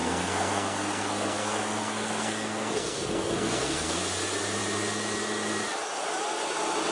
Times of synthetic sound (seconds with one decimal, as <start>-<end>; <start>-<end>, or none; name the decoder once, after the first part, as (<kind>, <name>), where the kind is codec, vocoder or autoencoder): 0.0-4.0 (codec, SNAC)